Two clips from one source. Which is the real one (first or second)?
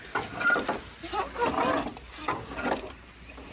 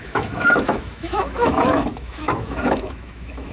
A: first